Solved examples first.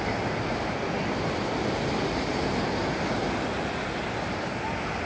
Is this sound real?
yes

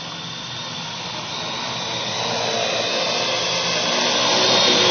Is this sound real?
yes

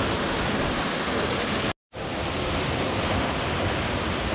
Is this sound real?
yes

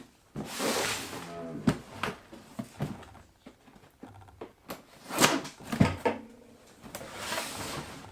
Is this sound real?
yes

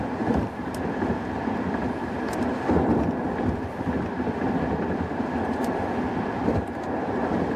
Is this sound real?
no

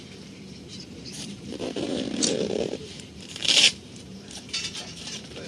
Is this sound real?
no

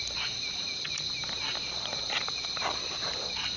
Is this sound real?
yes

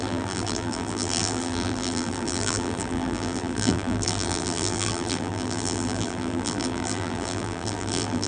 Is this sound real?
no